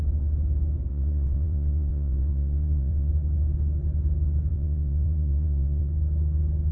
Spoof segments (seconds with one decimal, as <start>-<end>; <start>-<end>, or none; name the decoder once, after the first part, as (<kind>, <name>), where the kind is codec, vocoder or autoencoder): 0.9-3.1 (vocoder, WaveNeXt); 4.5-5.9